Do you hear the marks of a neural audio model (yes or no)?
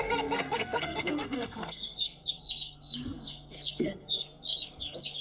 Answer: yes